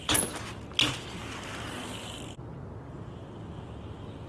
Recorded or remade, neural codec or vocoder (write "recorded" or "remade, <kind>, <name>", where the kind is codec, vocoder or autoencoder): recorded